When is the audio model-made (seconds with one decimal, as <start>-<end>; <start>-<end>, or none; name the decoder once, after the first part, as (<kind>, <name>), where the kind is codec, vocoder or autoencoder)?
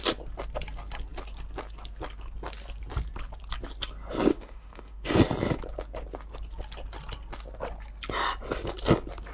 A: 4.3-5.1 (autoencoder, DAC-VAE)